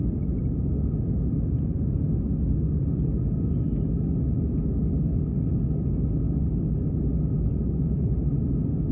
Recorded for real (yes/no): yes